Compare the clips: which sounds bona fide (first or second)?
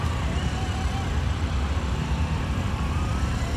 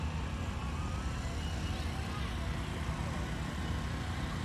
second